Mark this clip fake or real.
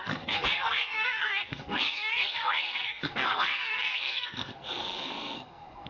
fake